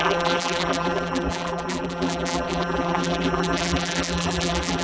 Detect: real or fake fake